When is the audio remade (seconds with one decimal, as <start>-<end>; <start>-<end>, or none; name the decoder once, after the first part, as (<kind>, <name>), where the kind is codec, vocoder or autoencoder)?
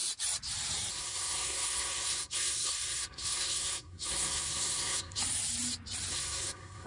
0.9-5.2 (codec, SNAC); 6.1-6.9